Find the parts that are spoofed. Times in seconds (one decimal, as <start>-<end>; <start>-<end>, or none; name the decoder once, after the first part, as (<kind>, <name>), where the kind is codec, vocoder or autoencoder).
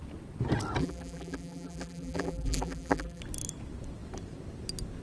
0.8-3.2 (vocoder, BigVGAN v2)